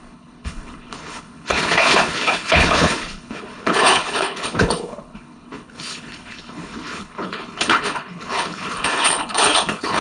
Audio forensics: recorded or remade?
remade